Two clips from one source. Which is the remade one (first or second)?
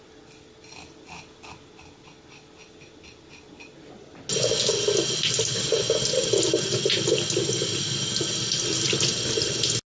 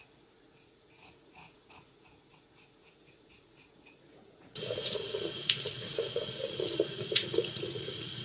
second